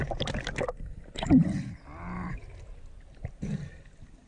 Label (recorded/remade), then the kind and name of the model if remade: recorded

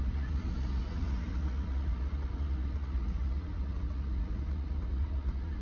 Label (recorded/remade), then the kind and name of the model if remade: remade, vocoder, Vocos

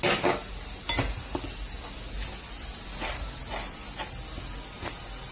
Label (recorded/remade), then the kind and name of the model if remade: recorded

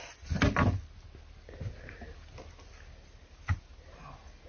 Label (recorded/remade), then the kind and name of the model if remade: recorded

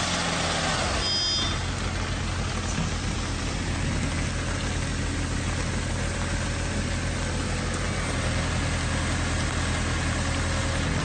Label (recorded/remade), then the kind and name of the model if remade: recorded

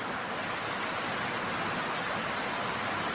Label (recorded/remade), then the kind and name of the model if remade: recorded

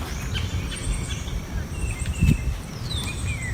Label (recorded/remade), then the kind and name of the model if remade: recorded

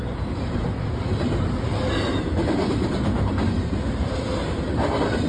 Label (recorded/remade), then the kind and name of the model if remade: recorded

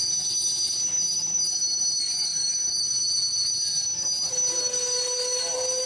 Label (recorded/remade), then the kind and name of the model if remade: recorded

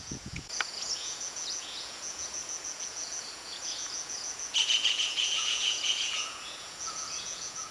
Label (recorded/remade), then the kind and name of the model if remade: remade, vocoder, Vocos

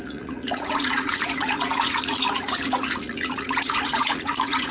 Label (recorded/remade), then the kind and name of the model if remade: remade, vocoder, Vocos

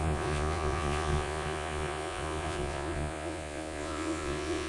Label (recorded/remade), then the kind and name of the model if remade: remade, vocoder, Vocos